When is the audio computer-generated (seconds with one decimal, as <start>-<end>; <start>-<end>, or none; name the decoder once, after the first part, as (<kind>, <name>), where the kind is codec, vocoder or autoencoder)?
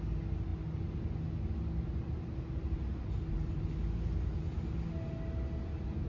none